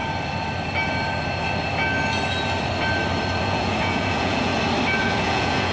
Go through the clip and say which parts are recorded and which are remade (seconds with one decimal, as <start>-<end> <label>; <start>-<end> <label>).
0.0-3.4 recorded; 3.4-4.5 remade; 4.5-5.0 recorded; 5.0-5.7 remade